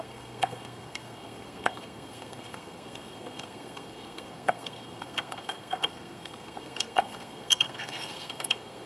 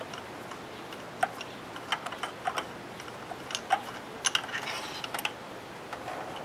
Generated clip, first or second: first